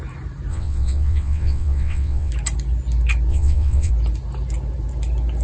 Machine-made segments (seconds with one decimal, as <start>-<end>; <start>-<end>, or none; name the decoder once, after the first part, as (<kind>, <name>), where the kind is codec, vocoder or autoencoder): 0.5-2.3 (vocoder, WaveNeXt); 3.3-3.9